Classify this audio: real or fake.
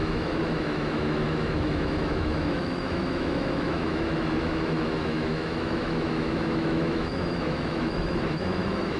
fake